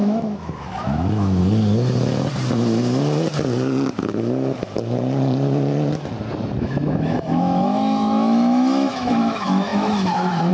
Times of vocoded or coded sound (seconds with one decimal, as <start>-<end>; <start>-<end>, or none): 0.0-1.4; 6.6-10.5